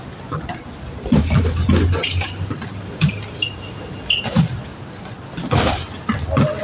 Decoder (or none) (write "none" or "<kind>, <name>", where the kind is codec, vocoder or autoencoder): none